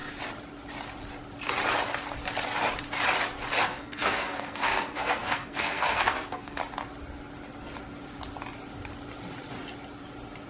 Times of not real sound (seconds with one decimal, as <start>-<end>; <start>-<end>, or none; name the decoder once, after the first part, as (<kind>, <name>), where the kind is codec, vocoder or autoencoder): 3.6-6.6 (codec, SNAC)